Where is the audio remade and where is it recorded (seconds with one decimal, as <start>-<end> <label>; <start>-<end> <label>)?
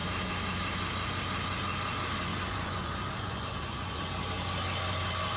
0.0-2.3 recorded; 2.3-4.0 remade; 4.0-5.4 recorded